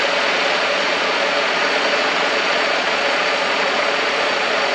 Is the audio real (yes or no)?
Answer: no